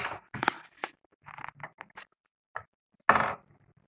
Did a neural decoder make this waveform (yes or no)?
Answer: no